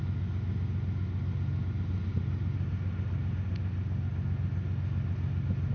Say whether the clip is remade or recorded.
recorded